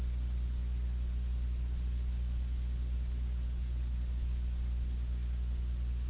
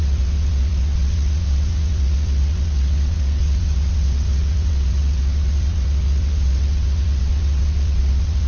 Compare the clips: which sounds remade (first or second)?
second